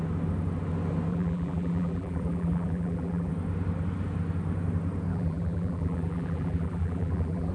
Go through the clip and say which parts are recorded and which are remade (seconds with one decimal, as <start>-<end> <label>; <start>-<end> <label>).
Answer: 0.0-1.1 recorded; 1.1-3.3 remade; 3.3-5.1 recorded; 5.1-7.5 remade